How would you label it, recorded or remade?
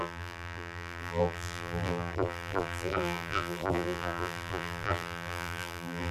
remade